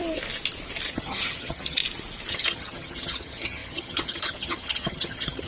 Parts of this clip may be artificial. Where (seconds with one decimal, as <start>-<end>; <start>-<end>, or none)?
0.9-1.8; 2.3-5.5